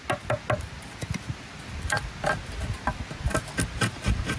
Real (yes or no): yes